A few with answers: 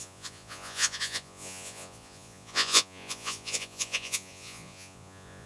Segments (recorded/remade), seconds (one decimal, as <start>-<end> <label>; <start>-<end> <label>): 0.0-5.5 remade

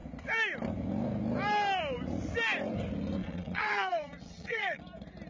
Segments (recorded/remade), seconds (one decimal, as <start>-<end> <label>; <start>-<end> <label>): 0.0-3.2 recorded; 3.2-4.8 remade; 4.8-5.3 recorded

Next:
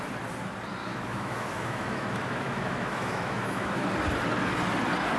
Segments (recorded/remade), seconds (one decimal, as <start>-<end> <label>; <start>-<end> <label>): 0.0-0.8 recorded; 0.8-3.9 remade; 3.9-5.2 recorded

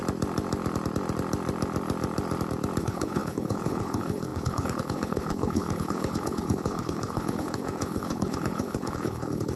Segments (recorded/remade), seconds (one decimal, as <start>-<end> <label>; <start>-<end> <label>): 0.0-2.8 recorded; 2.8-9.6 remade

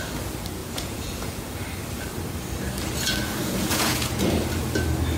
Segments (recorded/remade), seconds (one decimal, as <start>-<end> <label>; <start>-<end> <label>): 0.0-0.6 recorded; 0.6-1.5 remade; 1.5-3.4 recorded; 3.4-4.3 remade; 4.3-5.2 recorded

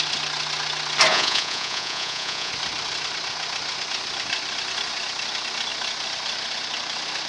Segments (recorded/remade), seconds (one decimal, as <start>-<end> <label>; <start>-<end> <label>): 0.0-1.1 recorded; 1.1-2.5 remade; 2.5-7.3 recorded

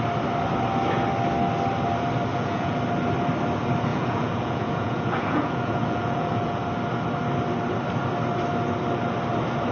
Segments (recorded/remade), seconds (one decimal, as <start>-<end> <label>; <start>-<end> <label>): 0.0-2.3 recorded; 2.3-2.8 remade; 2.8-3.9 recorded; 3.9-6.6 remade; 6.6-9.7 recorded